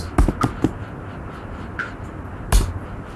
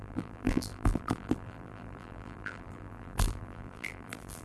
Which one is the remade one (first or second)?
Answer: second